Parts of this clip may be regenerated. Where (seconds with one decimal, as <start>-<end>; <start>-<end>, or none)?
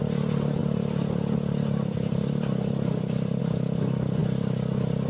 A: none